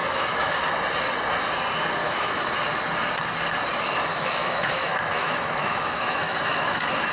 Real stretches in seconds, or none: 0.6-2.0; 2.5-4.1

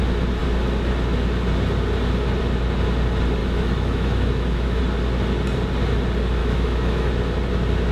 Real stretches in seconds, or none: 0.0-3.4; 4.8-6.4; 7.1-7.9

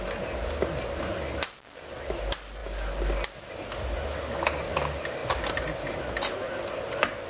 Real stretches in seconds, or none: 0.0-7.3

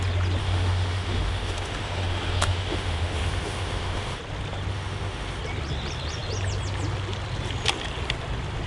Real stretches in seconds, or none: 0.0-0.4; 4.2-4.7; 5.4-8.7

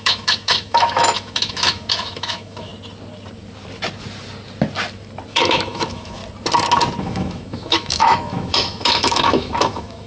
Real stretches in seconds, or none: 2.7-5.3; 6.2-7.0

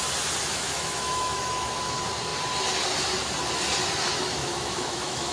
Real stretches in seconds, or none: 0.0-0.5; 1.9-4.4

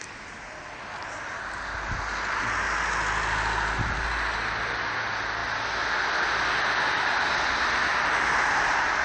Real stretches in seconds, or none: 0.0-9.0

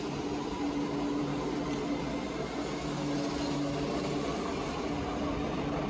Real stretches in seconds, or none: 0.0-5.9